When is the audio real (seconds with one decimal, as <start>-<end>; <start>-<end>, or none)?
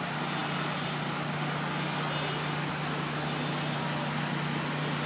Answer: 0.0-5.1